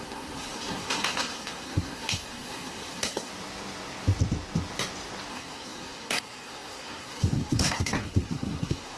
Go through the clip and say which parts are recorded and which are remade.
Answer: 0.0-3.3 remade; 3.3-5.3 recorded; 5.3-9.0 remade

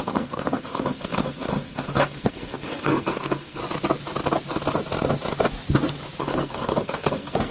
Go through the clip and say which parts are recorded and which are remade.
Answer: 0.0-3.6 remade; 3.6-6.2 recorded; 6.2-7.5 remade

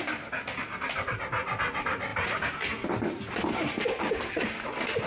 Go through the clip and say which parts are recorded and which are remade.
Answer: 0.0-5.1 recorded

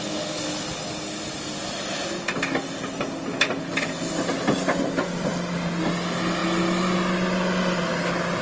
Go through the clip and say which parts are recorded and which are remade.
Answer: 0.0-8.4 recorded

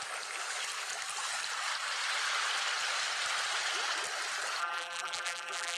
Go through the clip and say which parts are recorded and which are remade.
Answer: 0.0-4.6 recorded; 4.6-5.8 remade

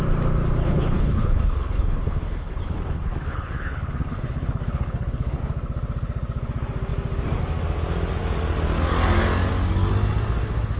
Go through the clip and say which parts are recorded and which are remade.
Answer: 0.0-0.6 recorded; 0.6-5.4 remade; 5.4-10.8 recorded

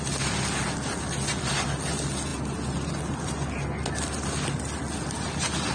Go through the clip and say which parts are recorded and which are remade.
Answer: 0.0-5.7 recorded

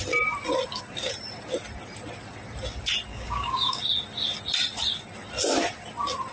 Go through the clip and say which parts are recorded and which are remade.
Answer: 0.0-3.1 recorded; 3.1-3.8 remade; 3.8-6.3 recorded